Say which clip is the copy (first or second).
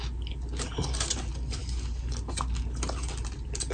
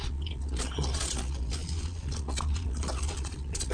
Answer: second